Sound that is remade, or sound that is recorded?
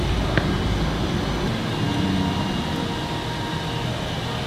recorded